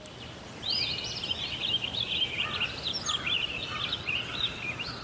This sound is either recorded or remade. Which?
recorded